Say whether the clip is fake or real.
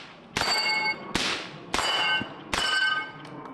real